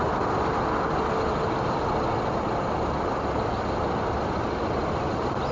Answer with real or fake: real